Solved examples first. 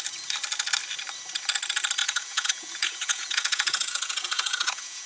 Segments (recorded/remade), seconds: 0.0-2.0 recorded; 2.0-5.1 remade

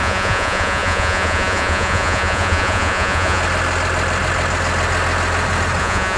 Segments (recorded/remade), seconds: 0.0-3.4 remade; 3.4-5.8 recorded; 5.8-6.2 remade

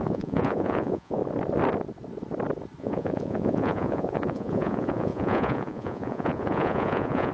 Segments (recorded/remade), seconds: 0.0-1.2 remade; 1.2-2.8 recorded; 2.8-7.3 remade

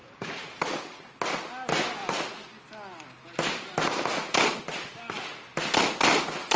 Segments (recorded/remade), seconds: 0.0-1.0 remade; 1.0-6.6 recorded

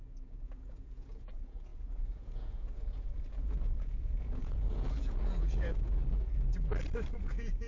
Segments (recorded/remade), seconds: 0.0-6.7 remade; 6.7-7.2 recorded; 7.2-7.7 remade